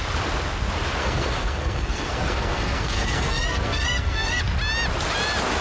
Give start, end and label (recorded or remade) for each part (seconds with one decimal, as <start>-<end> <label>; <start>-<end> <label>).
0.0-1.0 recorded; 1.0-4.4 remade; 4.4-5.6 recorded